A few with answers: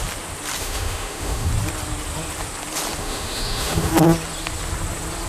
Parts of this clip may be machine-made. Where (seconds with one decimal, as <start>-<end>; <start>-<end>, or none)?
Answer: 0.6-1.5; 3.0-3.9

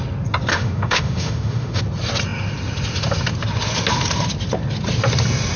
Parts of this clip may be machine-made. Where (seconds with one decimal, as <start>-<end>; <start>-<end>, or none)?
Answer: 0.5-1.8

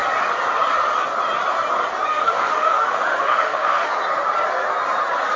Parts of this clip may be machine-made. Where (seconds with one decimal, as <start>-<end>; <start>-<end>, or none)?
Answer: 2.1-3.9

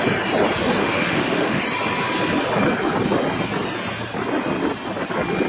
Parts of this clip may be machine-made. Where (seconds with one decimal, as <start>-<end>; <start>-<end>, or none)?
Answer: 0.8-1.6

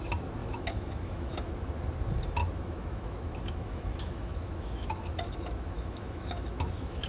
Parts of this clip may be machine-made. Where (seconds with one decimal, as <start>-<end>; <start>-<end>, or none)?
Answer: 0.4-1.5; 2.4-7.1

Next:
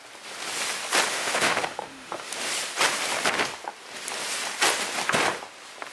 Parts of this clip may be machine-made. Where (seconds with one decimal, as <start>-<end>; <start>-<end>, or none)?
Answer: 1.1-2.3